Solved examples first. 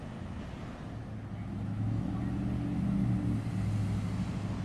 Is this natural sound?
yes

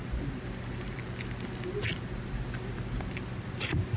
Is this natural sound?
yes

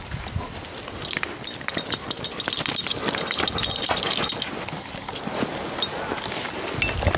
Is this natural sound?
yes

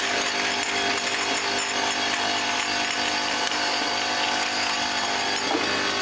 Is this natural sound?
yes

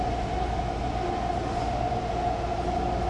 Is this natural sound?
yes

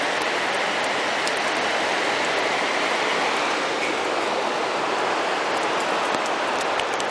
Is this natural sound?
yes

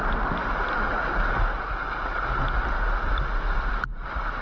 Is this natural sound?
yes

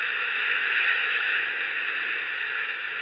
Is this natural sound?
no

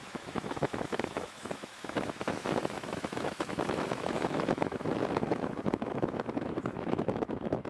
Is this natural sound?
no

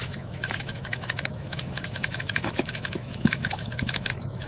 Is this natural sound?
no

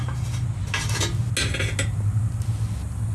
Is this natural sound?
yes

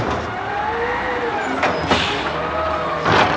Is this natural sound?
yes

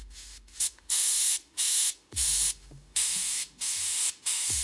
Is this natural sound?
no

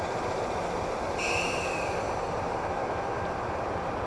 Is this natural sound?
yes